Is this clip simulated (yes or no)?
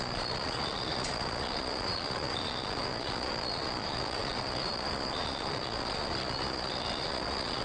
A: yes